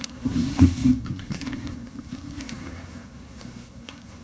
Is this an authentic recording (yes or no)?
no